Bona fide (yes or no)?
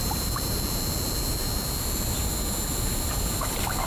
no